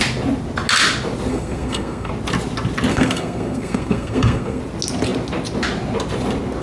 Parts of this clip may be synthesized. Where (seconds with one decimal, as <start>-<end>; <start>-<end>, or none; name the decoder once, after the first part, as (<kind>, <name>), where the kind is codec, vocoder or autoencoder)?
1.3-2.1 (codec, SNAC); 2.9-4.6